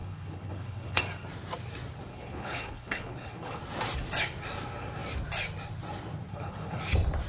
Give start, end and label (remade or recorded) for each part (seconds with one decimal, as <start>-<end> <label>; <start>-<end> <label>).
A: 0.0-1.0 remade; 1.0-2.1 recorded; 2.1-3.6 remade; 3.6-6.3 recorded; 6.3-6.8 remade; 6.8-7.3 recorded